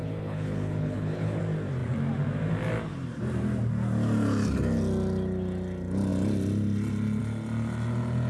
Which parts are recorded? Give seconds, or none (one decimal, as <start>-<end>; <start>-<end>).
1.4-8.3